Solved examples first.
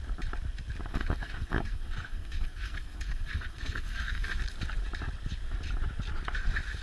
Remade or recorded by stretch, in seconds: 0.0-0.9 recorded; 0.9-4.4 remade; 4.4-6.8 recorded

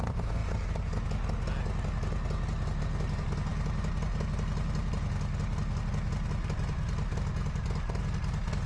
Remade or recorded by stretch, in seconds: 0.0-8.7 recorded

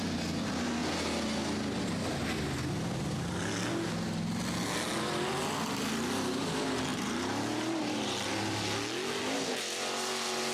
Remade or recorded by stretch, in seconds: 0.0-6.9 recorded; 6.9-8.3 remade; 8.3-10.5 recorded

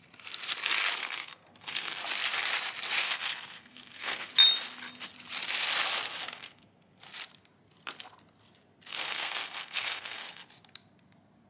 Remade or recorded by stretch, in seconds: 0.0-1.0 recorded; 1.0-2.0 remade; 2.0-3.0 recorded; 3.0-4.3 remade; 4.3-6.2 recorded; 6.2-7.0 remade; 7.0-8.9 recorded; 8.9-10.5 remade; 10.5-11.5 recorded